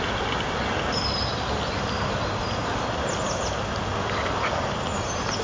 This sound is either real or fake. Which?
real